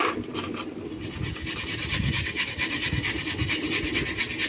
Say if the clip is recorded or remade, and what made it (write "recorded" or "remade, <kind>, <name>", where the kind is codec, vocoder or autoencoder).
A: recorded